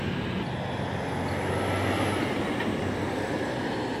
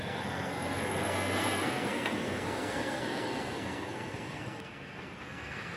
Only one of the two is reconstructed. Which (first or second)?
second